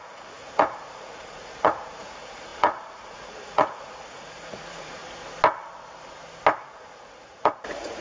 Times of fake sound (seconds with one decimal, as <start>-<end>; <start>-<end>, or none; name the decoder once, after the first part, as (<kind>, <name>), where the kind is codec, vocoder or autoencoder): 0.0-5.0 (vocoder, Vocos); 6.6-8.0